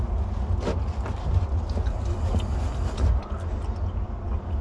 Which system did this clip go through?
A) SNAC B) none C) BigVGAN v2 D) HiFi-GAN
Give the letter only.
B